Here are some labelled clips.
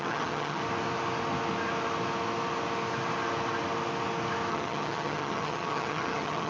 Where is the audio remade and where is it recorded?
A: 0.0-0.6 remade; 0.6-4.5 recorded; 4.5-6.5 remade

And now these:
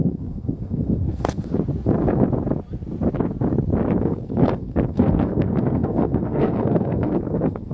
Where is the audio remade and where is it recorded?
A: 0.0-1.5 remade; 1.5-4.0 recorded; 4.0-7.7 remade

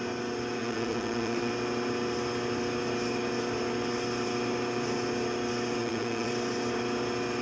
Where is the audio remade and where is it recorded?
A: 0.0-0.6 recorded; 0.6-1.5 remade; 1.5-5.8 recorded; 5.8-6.3 remade; 6.3-7.4 recorded